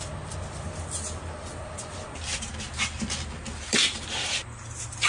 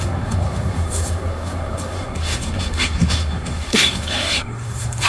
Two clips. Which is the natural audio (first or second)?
first